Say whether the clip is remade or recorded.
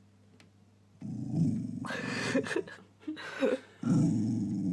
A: recorded